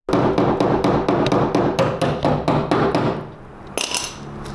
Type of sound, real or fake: real